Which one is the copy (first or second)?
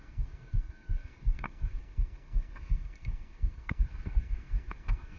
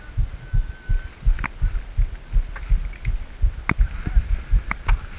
first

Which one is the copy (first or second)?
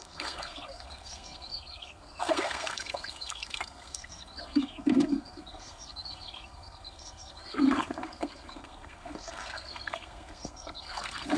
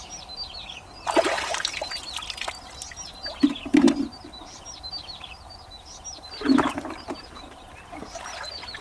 first